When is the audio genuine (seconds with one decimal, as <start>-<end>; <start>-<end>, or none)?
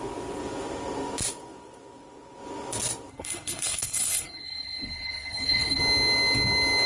0.0-3.1; 5.8-6.9